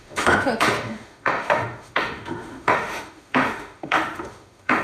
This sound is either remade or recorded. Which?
remade